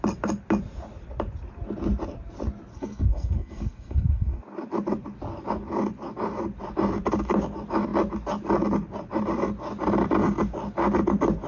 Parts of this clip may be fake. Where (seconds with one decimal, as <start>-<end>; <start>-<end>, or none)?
2.7-4.4